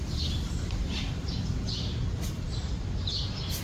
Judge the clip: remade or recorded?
recorded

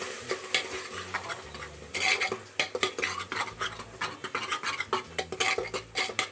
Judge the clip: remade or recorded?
recorded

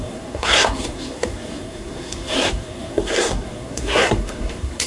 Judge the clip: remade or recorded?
remade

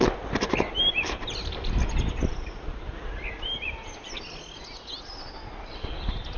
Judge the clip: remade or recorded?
recorded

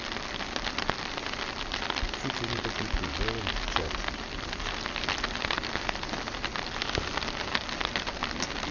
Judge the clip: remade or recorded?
recorded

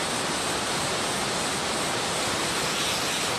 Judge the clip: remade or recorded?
recorded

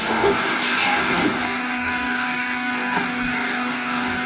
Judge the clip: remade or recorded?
remade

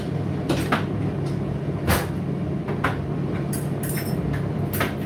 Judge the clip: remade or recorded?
recorded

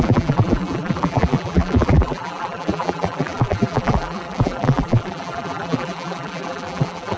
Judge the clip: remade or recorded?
remade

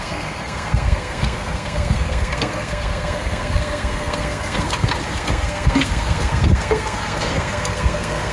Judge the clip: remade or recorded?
remade